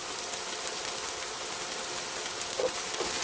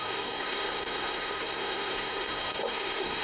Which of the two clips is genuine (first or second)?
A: first